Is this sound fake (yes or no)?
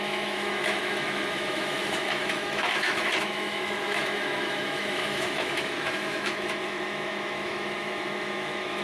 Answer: yes